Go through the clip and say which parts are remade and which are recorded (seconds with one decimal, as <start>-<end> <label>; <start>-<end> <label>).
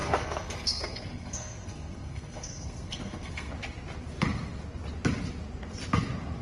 0.0-3.5 remade; 3.5-6.4 recorded